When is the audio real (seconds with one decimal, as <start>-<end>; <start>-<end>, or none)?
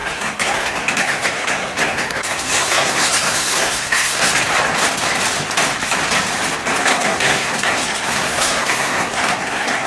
4.3-6.8